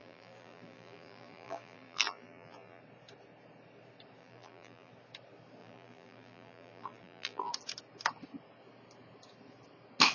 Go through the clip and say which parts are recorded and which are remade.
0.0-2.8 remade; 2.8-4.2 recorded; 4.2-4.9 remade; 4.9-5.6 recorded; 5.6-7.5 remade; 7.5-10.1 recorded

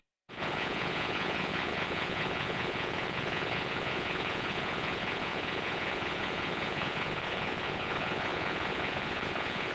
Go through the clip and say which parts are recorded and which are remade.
0.0-9.7 remade

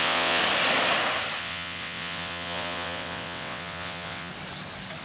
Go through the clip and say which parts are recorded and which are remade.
0.0-0.4 remade; 0.4-1.4 recorded; 1.4-4.3 remade; 4.3-5.0 recorded

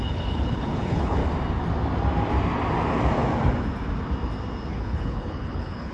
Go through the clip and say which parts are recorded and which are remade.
0.0-1.2 remade; 1.2-4.7 recorded; 4.7-5.9 remade

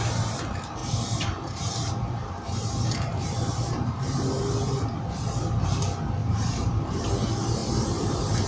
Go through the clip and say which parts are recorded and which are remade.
0.0-0.8 recorded; 0.8-4.4 remade; 4.4-6.2 recorded; 6.2-7.0 remade; 7.0-7.6 recorded; 7.6-8.5 remade

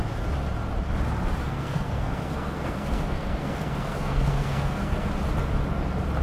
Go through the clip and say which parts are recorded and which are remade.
0.0-1.4 recorded; 1.4-5.1 remade; 5.1-6.2 recorded

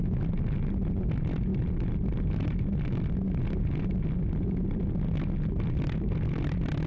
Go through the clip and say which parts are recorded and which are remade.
0.0-6.9 recorded

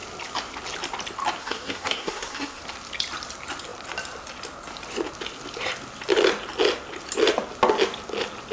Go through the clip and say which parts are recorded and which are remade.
0.0-1.4 recorded; 1.4-2.6 remade; 2.6-8.5 recorded